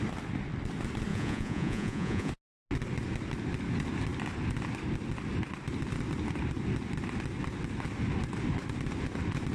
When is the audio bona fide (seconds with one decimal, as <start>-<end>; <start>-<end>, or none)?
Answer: 0.0-1.1; 2.3-9.5